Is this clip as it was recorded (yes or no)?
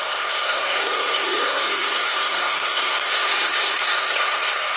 no